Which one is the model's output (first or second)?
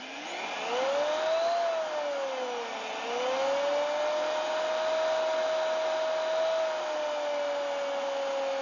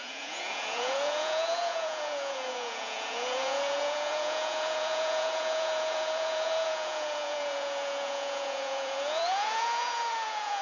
second